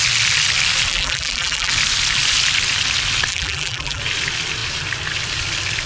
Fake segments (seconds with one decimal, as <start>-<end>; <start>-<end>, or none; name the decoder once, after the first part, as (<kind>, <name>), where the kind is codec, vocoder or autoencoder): 0.9-1.7 (vocoder, BigVGAN v2); 3.3-4.0